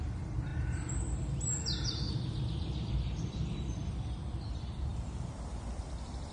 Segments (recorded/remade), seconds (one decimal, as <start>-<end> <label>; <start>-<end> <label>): 0.0-0.5 remade; 0.5-2.9 recorded; 2.9-6.3 remade